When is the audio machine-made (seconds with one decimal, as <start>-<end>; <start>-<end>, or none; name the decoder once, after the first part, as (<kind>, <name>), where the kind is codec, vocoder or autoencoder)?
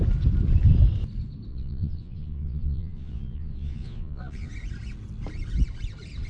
1.5-4.5 (vocoder, Vocos)